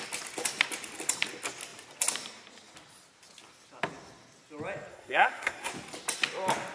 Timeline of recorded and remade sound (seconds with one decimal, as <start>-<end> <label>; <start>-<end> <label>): 0.0-4.9 recorded; 4.9-5.7 remade; 5.7-6.7 recorded